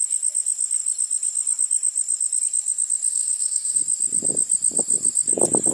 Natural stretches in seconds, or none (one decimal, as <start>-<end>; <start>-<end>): 0.0-3.1; 3.8-5.7